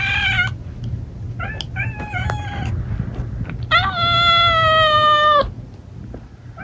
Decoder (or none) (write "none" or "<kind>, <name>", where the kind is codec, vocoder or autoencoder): none